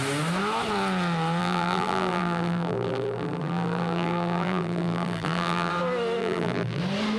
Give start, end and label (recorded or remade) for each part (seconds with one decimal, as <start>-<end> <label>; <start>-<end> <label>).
0.0-1.4 recorded; 1.4-5.7 remade; 5.7-6.2 recorded; 6.2-6.8 remade; 6.8-7.2 recorded